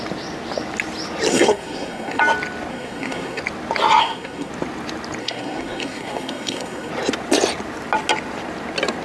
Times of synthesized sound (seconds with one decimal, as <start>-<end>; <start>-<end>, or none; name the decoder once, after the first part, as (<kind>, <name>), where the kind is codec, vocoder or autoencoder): 1.3-2.2 (codec, SNAC); 2.7-3.4; 4.0-4.5; 5.2-6.9